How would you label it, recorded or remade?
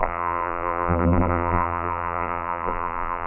remade